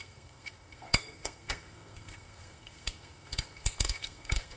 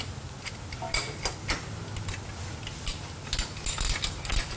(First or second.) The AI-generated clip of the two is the first